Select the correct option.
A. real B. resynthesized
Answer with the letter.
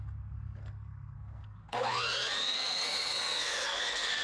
B